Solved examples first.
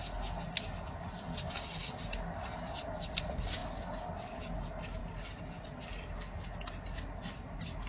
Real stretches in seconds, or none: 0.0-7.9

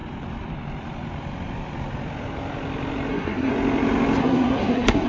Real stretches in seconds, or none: 0.0-3.1; 3.5-4.2

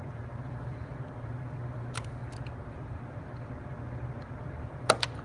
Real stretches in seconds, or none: 2.2-2.7

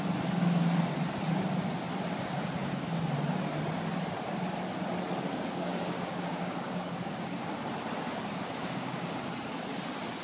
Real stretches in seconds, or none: 0.0-5.3; 7.5-8.6; 9.3-10.2

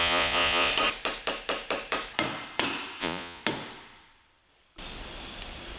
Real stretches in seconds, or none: 0.7-3.0; 3.4-5.8

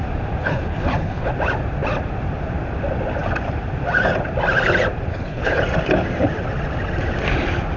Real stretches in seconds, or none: 0.0-0.4; 1.3-5.1; 5.6-7.8

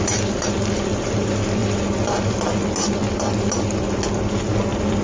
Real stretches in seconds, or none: 0.0-5.0

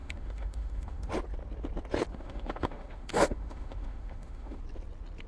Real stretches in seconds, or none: 1.1-2.1; 4.6-5.3